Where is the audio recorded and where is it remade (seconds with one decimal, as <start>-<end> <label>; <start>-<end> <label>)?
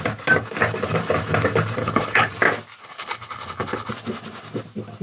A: 0.0-1.8 recorded; 1.8-2.3 remade; 2.3-2.8 recorded; 2.8-3.9 remade; 3.9-5.0 recorded